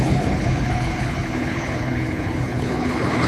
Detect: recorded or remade remade